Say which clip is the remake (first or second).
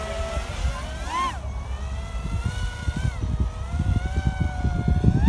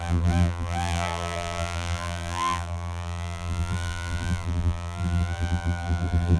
second